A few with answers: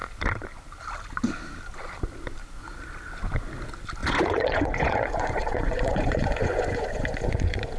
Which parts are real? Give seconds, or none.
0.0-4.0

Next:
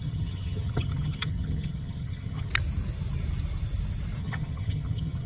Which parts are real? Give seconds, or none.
2.5-4.2